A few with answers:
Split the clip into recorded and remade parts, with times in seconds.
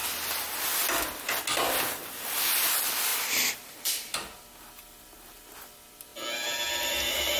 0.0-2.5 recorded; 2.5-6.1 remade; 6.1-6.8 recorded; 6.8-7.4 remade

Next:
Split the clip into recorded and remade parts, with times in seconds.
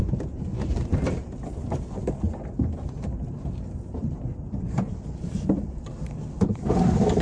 0.0-4.0 recorded; 4.0-7.2 remade